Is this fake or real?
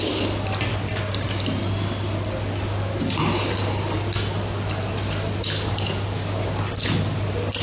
real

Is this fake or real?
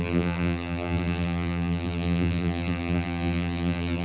fake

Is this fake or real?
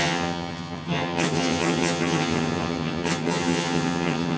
fake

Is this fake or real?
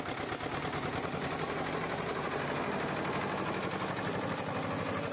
real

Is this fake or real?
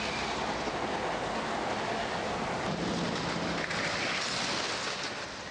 real